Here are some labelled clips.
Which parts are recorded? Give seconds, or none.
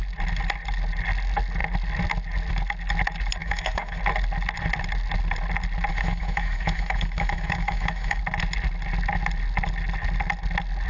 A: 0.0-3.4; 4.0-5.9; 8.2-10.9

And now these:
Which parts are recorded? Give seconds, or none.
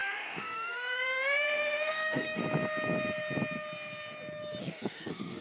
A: 2.4-4.6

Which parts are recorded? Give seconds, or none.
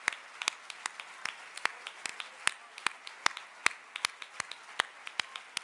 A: 0.0-5.6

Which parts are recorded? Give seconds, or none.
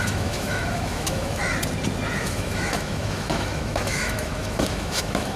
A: 1.4-2.2